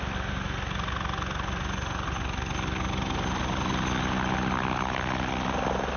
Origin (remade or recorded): recorded